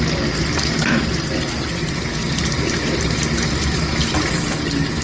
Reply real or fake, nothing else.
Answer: real